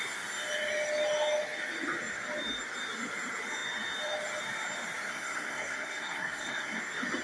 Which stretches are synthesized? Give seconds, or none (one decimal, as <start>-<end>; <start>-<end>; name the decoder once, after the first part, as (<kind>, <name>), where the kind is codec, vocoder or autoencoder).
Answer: 5.1-6.8 (codec, SNAC)

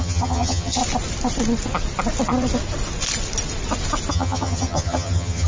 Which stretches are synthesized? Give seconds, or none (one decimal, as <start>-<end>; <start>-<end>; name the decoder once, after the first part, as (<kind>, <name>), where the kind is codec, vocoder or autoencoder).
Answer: 0.0-0.8 (vocoder, HiFi-GAN); 4.1-5.5